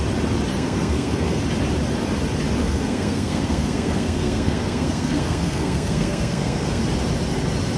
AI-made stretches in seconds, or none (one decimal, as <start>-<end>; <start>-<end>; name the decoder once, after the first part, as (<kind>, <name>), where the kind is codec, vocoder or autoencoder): 0.5-1.4 (codec, SNAC); 2.6-6.8